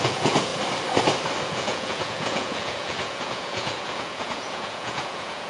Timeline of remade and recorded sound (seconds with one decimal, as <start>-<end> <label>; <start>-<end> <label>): 0.0-0.5 remade; 0.5-1.4 recorded; 1.4-5.5 remade